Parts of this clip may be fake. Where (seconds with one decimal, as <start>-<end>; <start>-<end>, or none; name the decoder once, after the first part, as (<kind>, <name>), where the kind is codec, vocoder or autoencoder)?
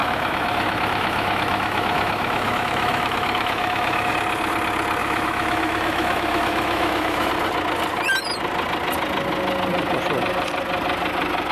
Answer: 0.0-4.1 (autoencoder, DAC-VAE); 5.0-7.3